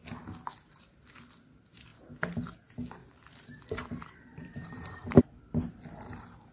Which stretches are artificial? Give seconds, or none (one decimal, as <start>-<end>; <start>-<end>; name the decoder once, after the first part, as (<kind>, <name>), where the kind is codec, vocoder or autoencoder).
3.0-5.2 (vocoder, BigVGAN v2)

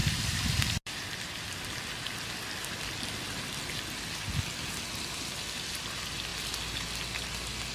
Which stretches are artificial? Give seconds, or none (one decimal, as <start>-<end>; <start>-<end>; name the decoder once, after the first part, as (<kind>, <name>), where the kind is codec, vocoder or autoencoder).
none